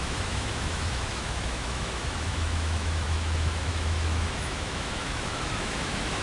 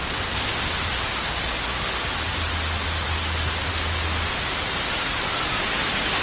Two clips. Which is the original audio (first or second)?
second